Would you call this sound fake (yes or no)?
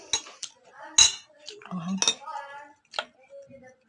no